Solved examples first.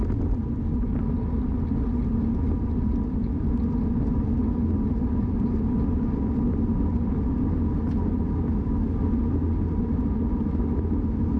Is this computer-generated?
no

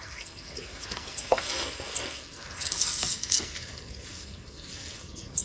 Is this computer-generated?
yes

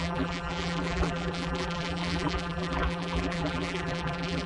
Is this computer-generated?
yes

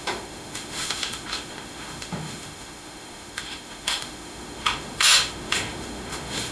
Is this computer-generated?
yes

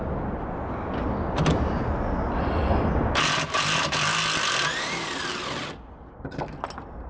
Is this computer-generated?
no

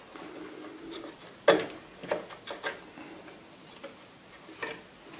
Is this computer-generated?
no